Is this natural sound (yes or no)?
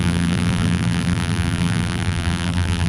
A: no